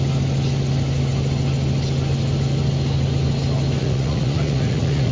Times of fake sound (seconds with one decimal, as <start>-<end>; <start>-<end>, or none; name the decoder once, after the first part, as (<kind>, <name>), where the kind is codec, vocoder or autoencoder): 3.8-5.1 (vocoder, Vocos)